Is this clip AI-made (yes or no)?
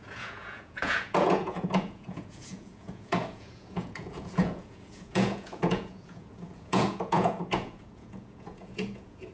yes